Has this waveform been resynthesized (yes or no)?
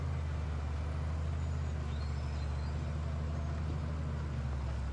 no